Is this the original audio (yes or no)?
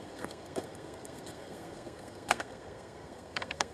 no